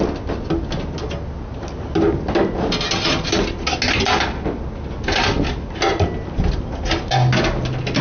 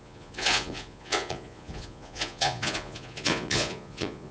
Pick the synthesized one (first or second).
second